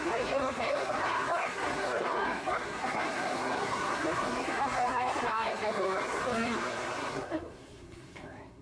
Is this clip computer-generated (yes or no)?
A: yes